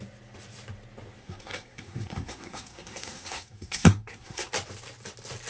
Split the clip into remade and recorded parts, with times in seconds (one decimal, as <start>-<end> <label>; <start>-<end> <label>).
0.0-1.2 recorded; 1.2-4.5 remade; 4.5-5.5 recorded